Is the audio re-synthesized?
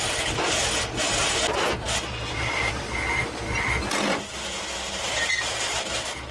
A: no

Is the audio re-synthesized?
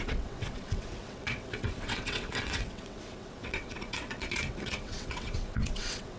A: yes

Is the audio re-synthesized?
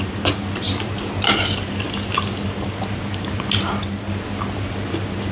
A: no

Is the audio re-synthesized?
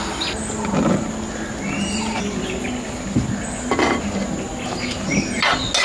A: no